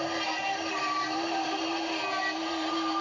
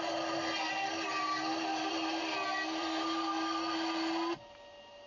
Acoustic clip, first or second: second